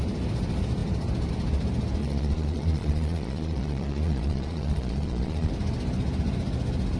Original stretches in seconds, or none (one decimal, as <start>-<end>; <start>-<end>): 0.0-2.0; 5.5-7.0